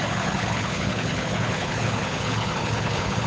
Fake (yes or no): yes